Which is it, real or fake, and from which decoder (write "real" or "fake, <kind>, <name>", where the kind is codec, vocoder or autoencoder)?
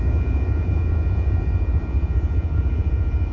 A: fake, vocoder, Vocos